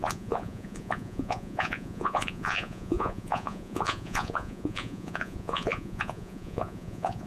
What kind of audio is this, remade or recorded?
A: remade